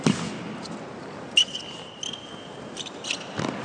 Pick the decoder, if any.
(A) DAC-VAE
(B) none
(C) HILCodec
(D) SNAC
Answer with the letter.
B